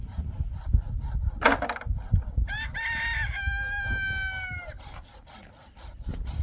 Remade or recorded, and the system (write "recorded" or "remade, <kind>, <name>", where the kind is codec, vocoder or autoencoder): recorded